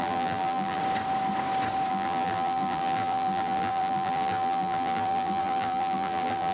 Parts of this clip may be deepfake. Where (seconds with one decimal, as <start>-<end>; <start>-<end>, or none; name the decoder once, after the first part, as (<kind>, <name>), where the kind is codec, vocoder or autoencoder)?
0.0-0.8 (vocoder, BigVGAN v2); 1.9-6.5